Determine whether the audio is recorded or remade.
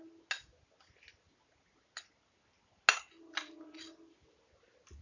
recorded